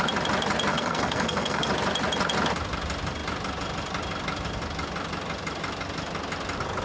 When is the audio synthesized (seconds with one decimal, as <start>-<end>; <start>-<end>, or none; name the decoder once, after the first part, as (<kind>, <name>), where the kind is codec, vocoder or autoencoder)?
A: 0.7-1.7 (codec, SNAC)